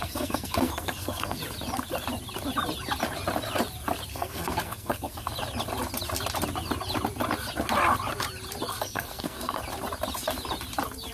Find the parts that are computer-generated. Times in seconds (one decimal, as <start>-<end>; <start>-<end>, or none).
0.0-1.4; 4.1-5.3; 8.7-9.6